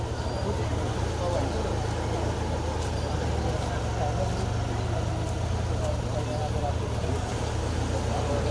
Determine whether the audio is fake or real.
real